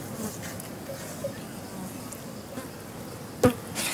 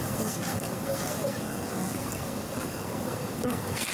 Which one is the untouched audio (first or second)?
first